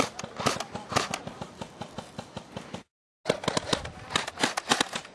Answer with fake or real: real